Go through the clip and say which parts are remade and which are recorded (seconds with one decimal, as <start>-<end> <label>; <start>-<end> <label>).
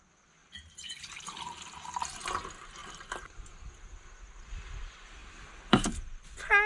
0.0-0.4 recorded; 0.4-2.4 remade; 2.4-2.8 recorded; 2.8-3.7 remade; 3.7-5.2 recorded; 5.2-6.2 remade; 6.2-6.7 recorded